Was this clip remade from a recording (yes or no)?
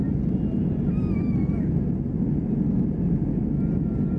no